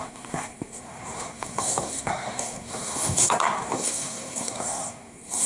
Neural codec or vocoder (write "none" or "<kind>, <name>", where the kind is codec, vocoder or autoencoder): codec, SNAC